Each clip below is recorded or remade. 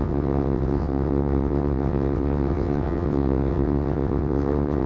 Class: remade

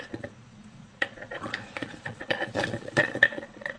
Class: remade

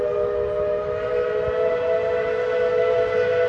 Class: recorded